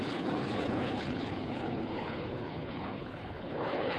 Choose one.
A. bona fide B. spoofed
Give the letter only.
B